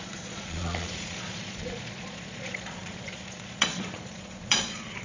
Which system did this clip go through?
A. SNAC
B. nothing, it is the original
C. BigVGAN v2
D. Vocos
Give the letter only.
D